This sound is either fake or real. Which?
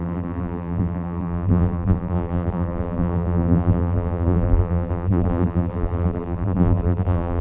fake